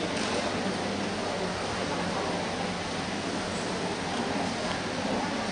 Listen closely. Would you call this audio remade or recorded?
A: recorded